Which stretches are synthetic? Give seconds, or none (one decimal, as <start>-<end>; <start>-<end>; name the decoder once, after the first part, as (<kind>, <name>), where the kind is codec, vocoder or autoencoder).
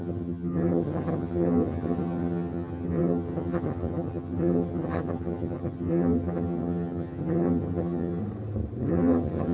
0.0-8.2 (vocoder, HiFi-GAN); 8.9-9.5